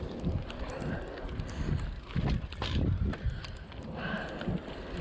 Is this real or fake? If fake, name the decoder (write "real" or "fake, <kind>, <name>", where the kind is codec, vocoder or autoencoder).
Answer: real